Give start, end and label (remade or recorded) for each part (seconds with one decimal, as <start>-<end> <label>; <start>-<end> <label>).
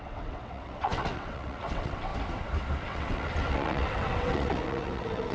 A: 0.0-2.1 remade; 2.1-2.8 recorded; 2.8-5.3 remade